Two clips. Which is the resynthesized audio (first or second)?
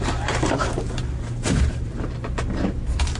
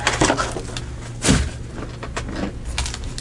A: first